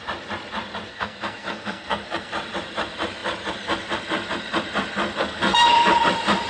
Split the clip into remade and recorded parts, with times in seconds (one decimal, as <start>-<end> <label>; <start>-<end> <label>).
0.0-0.9 recorded; 0.9-2.3 remade; 2.3-5.2 recorded; 5.2-5.9 remade; 5.9-6.5 recorded